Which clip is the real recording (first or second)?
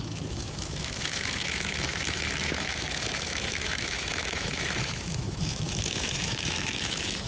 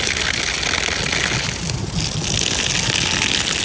second